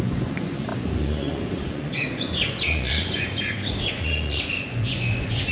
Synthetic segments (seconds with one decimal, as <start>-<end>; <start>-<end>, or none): 0.0-5.5

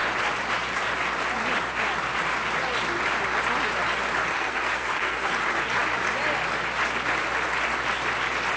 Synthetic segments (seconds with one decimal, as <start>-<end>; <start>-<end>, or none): 4.3-5.3

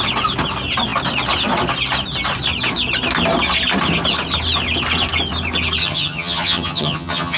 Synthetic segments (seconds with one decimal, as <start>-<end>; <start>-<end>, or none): 5.8-7.4